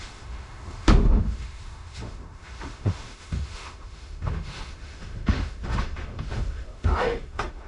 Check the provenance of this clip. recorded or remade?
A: remade